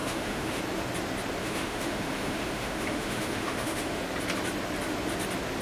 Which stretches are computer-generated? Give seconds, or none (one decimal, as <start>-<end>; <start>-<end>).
0.0-0.6; 1.4-4.0